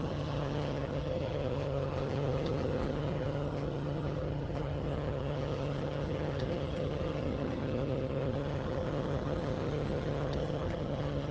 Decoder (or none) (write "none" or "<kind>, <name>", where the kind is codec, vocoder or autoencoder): vocoder, HiFi-GAN